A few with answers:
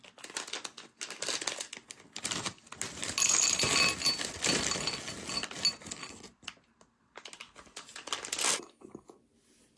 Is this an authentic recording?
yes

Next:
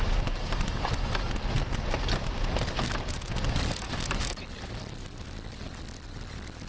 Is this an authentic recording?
yes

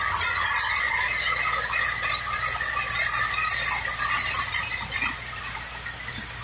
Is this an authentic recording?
yes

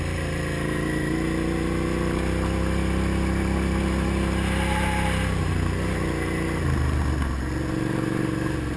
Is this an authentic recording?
yes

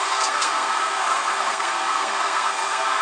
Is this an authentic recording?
no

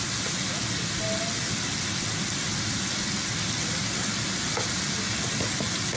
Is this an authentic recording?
yes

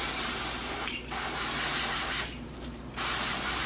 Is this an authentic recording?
yes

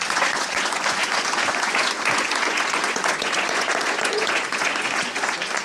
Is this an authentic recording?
no